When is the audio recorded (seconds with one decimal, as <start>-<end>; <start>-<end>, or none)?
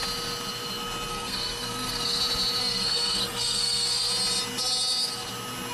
0.0-1.1; 2.2-2.6; 4.1-5.7